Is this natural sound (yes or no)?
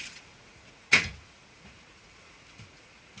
no